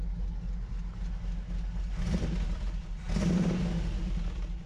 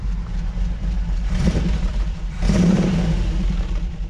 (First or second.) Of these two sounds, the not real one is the second